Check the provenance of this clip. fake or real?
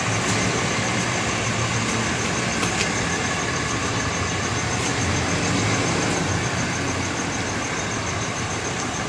real